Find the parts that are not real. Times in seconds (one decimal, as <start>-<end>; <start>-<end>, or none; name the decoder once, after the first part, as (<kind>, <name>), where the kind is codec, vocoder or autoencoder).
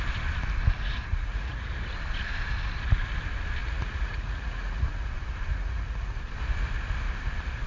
1.1-1.7 (vocoder, Vocos); 3.6-5.1; 5.5-6.2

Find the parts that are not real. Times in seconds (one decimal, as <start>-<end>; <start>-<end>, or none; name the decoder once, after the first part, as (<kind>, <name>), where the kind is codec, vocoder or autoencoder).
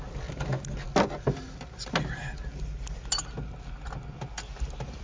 none